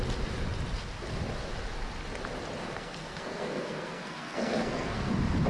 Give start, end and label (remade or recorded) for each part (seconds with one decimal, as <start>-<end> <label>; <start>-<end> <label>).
0.0-2.6 recorded; 2.6-5.1 remade; 5.1-5.5 recorded